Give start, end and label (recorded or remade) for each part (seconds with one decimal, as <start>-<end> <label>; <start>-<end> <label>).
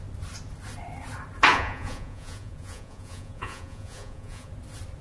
0.0-1.5 recorded; 1.5-4.5 remade; 4.5-5.0 recorded